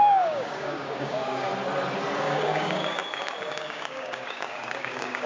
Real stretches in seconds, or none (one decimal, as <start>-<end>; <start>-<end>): 1.5-2.2